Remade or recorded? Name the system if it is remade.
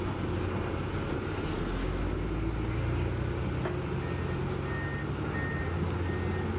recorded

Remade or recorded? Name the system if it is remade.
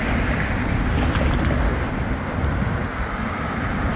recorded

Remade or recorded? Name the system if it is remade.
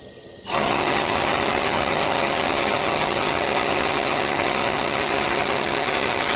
remade, vocoder, HiFi-GAN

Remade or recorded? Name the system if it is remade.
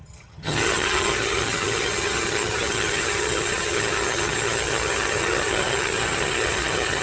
remade, vocoder, HiFi-GAN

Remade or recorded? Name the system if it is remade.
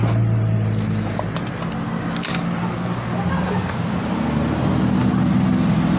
recorded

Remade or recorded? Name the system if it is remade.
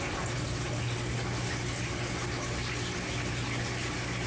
recorded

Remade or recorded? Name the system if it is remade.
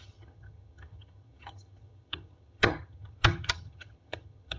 remade, vocoder, HiFi-GAN